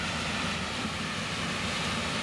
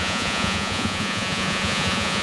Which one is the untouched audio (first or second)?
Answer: first